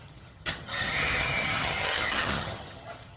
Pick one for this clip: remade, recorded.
remade